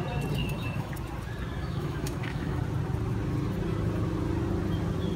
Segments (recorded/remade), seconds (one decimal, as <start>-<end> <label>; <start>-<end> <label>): 0.0-0.4 recorded; 0.4-0.9 remade; 0.9-1.6 recorded; 1.6-2.6 remade; 2.6-5.2 recorded